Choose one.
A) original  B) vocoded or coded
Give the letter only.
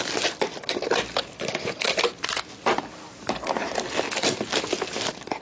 A